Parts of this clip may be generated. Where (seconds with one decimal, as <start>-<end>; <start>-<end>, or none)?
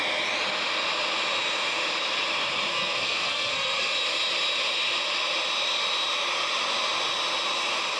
2.7-3.9